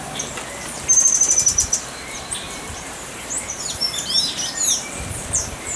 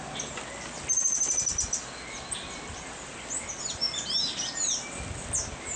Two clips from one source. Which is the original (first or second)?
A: second